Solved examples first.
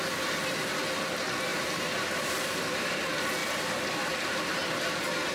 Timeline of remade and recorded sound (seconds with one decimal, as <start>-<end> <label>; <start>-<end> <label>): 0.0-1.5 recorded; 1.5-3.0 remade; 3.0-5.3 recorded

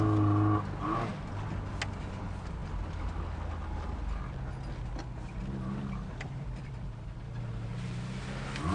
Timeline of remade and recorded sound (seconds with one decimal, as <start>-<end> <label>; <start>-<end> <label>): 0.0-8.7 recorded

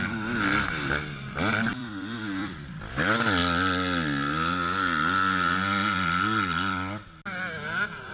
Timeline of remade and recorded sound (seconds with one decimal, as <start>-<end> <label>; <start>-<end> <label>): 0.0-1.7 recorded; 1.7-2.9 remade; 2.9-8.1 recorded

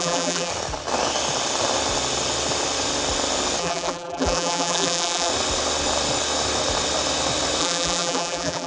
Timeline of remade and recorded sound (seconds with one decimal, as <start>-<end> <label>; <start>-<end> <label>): 0.0-0.5 remade; 0.5-3.6 recorded; 3.6-5.3 remade; 5.3-7.6 recorded; 7.6-8.7 remade

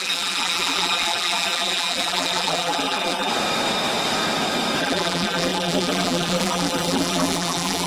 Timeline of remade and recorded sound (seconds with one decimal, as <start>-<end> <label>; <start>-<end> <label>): 0.0-3.3 remade; 3.3-4.8 recorded; 4.8-7.9 remade